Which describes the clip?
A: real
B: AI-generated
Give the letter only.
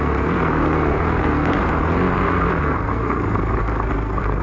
B